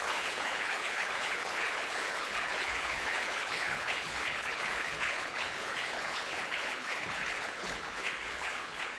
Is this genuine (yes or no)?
no